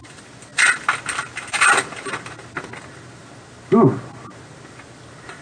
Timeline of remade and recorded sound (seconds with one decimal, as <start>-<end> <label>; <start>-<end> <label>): 0.0-5.4 recorded